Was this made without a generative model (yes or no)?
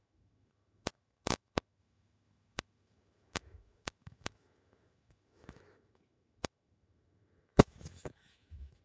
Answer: no